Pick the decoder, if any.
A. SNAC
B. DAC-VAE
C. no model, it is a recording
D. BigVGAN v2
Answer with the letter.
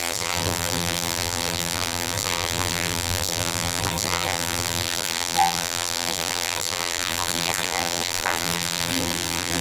D